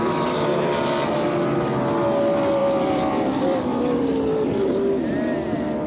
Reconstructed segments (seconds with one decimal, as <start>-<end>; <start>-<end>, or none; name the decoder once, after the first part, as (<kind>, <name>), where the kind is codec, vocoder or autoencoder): 2.6-4.7 (vocoder, BigVGAN v2)